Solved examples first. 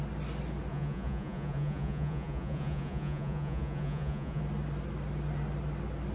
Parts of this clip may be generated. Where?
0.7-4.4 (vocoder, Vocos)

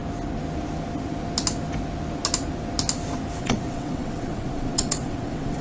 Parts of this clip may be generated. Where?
3.4-5.6 (vocoder, WaveNeXt)